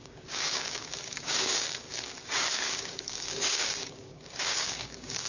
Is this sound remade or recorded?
remade